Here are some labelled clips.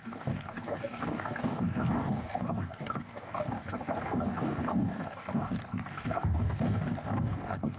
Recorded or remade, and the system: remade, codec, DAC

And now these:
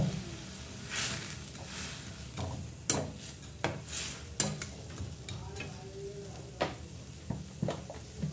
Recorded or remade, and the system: recorded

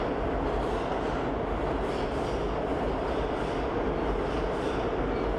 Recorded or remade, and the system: recorded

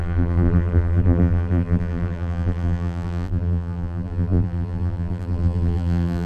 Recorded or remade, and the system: remade, vocoder, BigVGAN v2